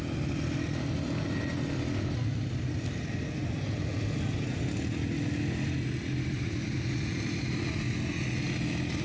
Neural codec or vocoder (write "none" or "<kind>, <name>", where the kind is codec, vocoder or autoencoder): none